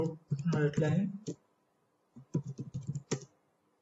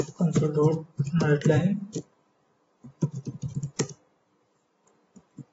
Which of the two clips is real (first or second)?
first